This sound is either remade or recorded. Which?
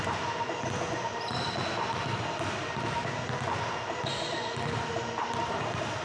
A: recorded